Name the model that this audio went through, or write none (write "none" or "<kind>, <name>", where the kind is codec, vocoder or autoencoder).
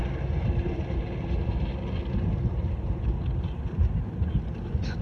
none